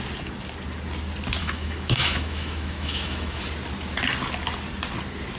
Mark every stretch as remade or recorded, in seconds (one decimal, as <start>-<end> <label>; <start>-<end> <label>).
0.0-1.4 recorded; 1.4-3.4 remade; 3.4-5.4 recorded

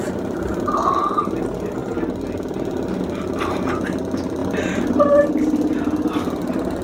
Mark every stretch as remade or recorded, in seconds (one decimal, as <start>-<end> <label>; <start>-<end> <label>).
0.0-6.8 recorded

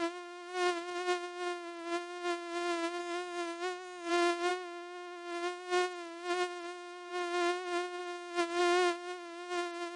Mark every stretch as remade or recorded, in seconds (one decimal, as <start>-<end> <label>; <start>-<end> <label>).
0.0-3.0 recorded; 3.0-4.1 remade; 4.1-10.0 recorded

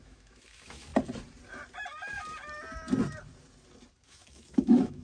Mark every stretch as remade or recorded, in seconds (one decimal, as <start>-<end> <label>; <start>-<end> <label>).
0.0-0.9 remade; 0.9-3.9 recorded; 3.9-5.0 remade